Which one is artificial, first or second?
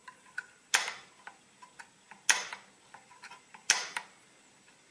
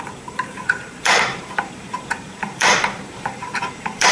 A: second